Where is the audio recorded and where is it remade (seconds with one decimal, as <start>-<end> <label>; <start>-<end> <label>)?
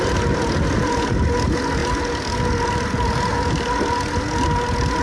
0.0-5.0 recorded